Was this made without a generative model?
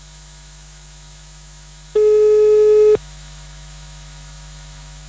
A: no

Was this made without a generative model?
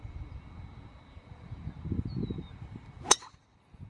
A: yes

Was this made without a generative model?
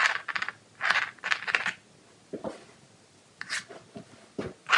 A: yes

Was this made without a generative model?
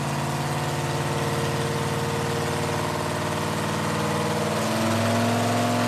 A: yes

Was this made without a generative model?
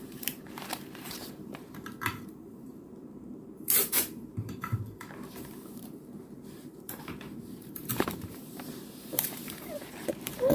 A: no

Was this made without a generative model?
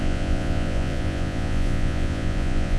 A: no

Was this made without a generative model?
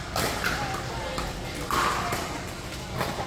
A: yes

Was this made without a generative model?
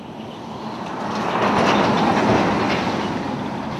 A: yes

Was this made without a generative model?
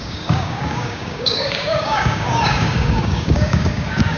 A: no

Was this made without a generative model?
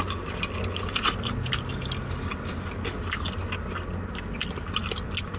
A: yes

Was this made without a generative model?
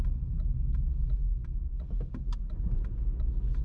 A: yes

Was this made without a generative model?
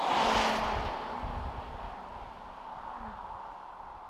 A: yes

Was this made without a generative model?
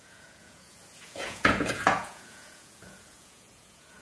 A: no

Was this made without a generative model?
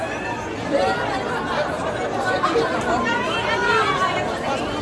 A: yes